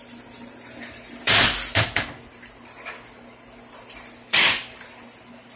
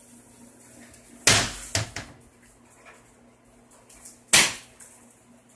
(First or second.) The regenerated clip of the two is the first